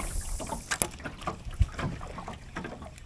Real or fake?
real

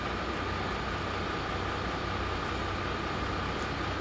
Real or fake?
real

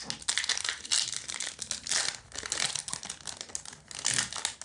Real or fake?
real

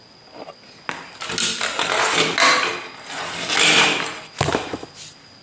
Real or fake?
real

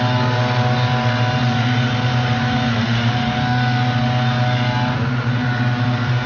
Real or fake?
real